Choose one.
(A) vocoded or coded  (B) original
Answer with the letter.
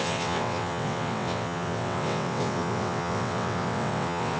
A